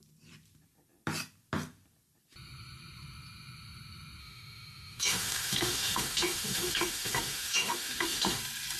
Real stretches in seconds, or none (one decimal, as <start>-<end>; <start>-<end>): 0.0-4.2; 8.4-8.8